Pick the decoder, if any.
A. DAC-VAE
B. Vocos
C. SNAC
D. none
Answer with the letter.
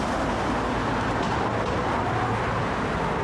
D